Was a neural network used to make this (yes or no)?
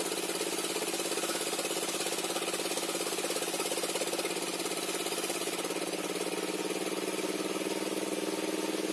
no